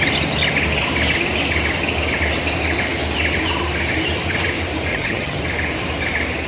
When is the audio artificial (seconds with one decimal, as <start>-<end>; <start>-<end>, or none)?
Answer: 4.9-5.4